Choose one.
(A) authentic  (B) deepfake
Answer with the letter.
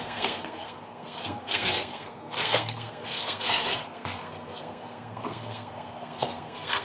B